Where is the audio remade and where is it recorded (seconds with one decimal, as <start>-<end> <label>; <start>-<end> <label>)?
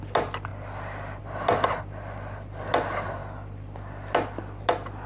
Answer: 0.0-5.1 recorded